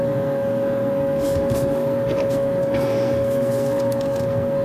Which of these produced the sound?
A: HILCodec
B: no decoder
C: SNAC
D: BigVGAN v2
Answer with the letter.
C